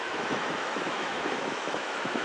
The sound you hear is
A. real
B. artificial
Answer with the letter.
B